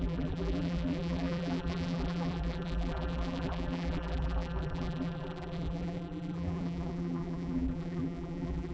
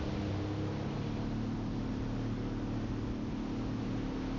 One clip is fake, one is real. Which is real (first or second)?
second